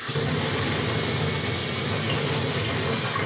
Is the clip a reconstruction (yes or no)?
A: no